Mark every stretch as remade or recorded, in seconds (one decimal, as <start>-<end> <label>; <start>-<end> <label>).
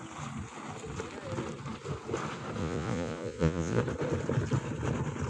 0.0-2.6 recorded; 2.6-3.8 remade; 3.8-5.3 recorded